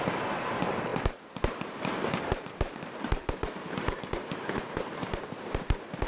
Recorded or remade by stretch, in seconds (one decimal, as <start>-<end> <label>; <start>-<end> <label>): 0.0-6.1 remade